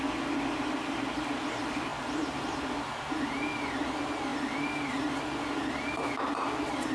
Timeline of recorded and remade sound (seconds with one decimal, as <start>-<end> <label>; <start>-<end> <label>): 0.0-6.9 recorded